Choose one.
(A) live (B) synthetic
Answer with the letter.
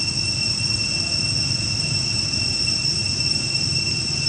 A